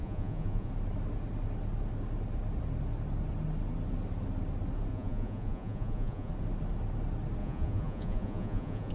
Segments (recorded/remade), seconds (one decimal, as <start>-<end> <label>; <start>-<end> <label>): 0.0-0.7 remade; 0.7-4.9 recorded; 4.9-6.3 remade; 6.3-7.4 recorded; 7.4-8.9 remade